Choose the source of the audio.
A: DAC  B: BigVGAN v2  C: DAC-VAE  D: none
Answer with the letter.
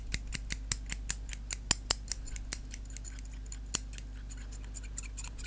D